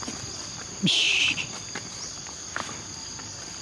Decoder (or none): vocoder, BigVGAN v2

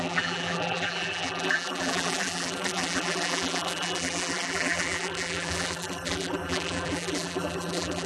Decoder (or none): vocoder, BigVGAN v2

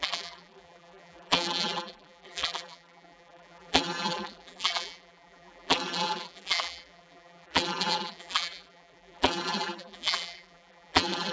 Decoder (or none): vocoder, BigVGAN v2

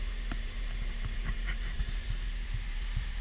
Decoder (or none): vocoder, BigVGAN v2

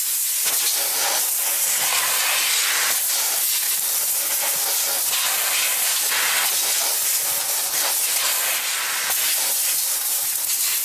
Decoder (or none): none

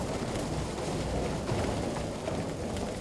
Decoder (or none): none